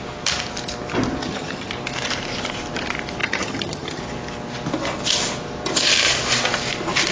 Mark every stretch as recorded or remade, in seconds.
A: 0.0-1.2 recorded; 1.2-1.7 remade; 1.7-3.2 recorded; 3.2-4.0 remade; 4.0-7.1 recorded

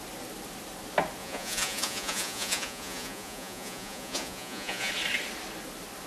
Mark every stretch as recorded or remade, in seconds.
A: 0.0-1.2 recorded; 1.2-4.9 remade; 4.9-6.1 recorded

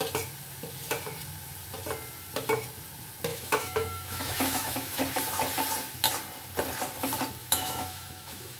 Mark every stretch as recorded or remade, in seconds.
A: 0.0-3.3 recorded; 3.3-5.0 remade; 5.0-7.4 recorded; 7.4-8.6 remade

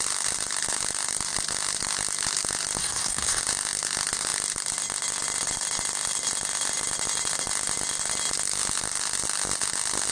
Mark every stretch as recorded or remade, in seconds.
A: 0.0-2.8 recorded; 2.8-3.4 remade; 3.4-10.1 recorded

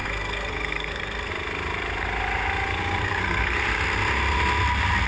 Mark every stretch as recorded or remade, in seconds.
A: 0.0-1.3 remade; 1.3-3.0 recorded; 3.0-3.6 remade; 3.6-5.1 recorded